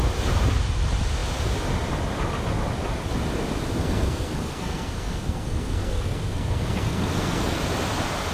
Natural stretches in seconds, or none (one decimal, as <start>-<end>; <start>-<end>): 0.0-3.8; 7.6-8.3